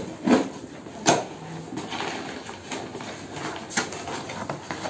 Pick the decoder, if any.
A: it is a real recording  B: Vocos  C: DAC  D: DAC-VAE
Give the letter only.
A